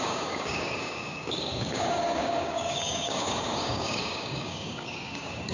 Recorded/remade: remade